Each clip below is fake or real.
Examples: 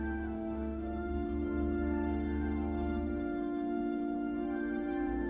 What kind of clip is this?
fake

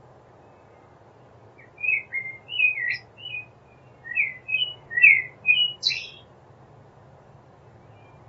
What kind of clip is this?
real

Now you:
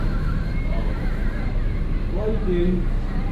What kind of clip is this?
real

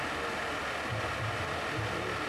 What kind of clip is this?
real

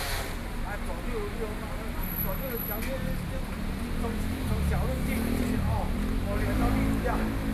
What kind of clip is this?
real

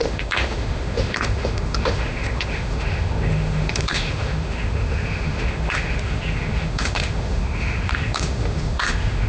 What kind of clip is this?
fake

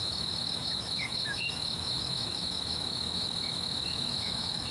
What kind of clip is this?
fake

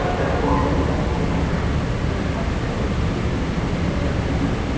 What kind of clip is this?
real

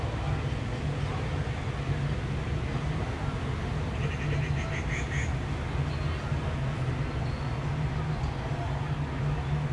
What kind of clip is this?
real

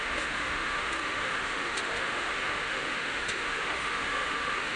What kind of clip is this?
fake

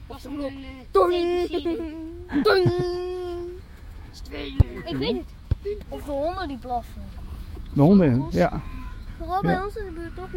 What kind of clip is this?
fake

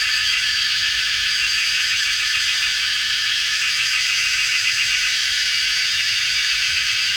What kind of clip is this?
fake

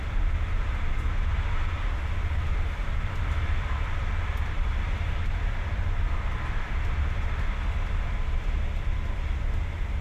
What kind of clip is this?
real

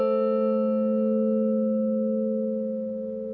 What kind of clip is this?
real